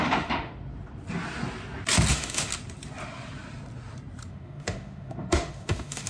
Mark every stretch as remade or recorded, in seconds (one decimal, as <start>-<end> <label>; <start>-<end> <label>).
0.0-0.5 remade; 0.5-2.1 recorded; 2.1-2.5 remade; 2.5-4.3 recorded; 4.3-6.1 remade